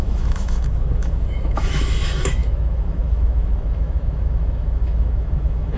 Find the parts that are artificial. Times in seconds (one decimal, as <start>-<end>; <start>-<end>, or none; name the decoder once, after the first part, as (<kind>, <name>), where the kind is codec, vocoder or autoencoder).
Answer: 0.0-5.8 (autoencoder, DAC-VAE)